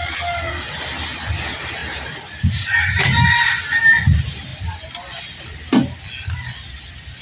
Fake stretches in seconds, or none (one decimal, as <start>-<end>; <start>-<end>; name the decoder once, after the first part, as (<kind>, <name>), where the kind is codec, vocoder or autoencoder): none